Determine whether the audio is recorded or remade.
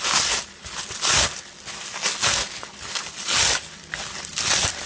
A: recorded